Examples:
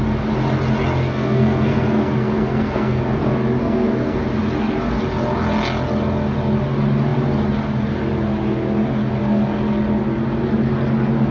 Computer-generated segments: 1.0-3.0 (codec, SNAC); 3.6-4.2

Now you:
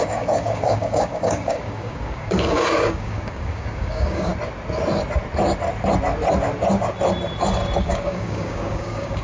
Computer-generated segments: 0.0-4.3 (codec, DAC); 7.8-9.2